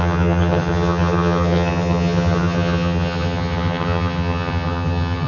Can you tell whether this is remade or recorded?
remade